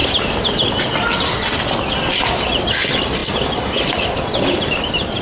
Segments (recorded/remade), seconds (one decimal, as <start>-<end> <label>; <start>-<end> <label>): 0.0-5.2 recorded